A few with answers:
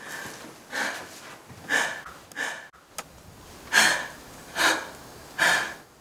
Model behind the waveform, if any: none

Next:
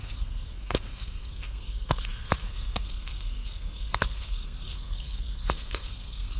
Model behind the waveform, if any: codec, SNAC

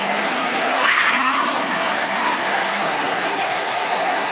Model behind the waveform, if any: codec, SNAC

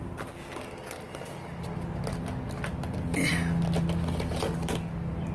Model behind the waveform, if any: none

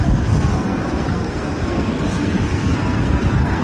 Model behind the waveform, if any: codec, SNAC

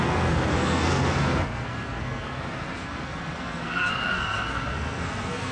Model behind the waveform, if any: codec, SNAC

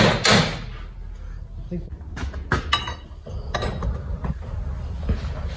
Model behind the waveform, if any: none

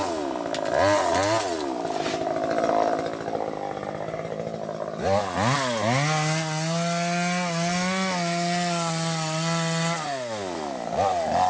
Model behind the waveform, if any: none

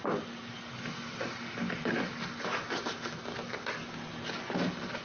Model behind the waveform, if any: none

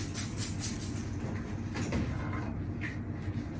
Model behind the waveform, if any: none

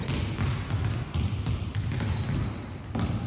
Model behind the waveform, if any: none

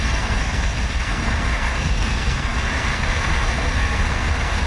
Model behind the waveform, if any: codec, SNAC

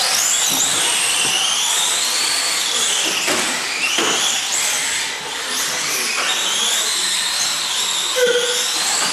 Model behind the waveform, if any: none